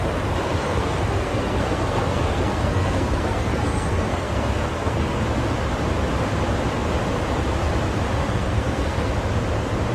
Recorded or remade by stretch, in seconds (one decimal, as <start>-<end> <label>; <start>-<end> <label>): 0.0-0.6 recorded; 0.6-5.2 remade; 5.2-8.2 recorded; 8.2-9.1 remade; 9.1-9.9 recorded

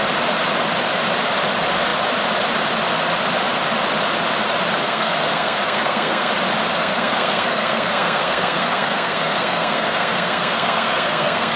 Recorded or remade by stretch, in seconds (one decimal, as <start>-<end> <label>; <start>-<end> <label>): 0.0-4.8 recorded; 4.8-6.3 remade; 6.3-6.8 recorded; 6.8-11.6 remade